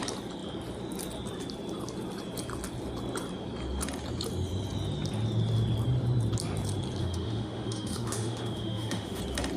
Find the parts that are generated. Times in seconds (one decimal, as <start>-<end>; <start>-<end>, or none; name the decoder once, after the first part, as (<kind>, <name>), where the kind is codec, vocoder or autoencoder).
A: 7.0-9.2 (autoencoder, DAC-VAE)